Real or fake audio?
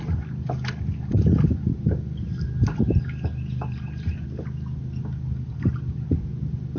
real